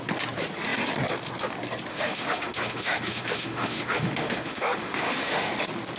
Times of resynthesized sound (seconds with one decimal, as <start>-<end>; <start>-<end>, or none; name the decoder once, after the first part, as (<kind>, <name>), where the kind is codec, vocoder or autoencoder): 1.9-5.5 (autoencoder, DAC-VAE)